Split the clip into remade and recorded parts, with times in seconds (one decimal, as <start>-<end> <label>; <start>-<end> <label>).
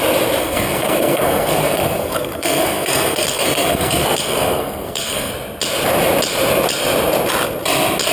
0.0-0.4 recorded; 0.4-5.3 remade; 5.3-8.1 recorded